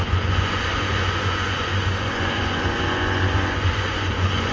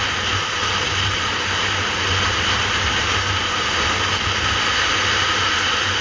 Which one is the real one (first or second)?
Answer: second